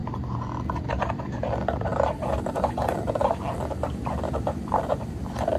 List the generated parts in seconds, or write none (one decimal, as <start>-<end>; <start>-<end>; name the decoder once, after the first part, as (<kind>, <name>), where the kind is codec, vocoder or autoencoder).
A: 0.8-5.6 (vocoder, BigVGAN v2)